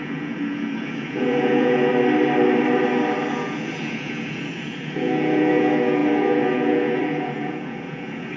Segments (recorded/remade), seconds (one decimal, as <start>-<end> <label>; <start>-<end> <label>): 0.0-1.9 remade; 1.9-3.3 recorded; 3.3-8.4 remade